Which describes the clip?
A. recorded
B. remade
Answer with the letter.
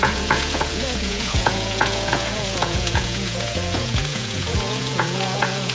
B